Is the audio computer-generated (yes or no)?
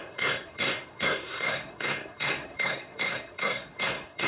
yes